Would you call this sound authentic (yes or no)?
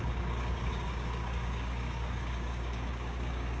no